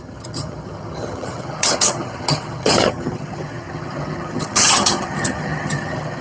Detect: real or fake fake